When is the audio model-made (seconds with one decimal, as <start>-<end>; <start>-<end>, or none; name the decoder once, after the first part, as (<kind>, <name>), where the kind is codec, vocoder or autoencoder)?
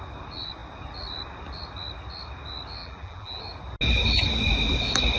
2.8-3.4 (vocoder, BigVGAN v2)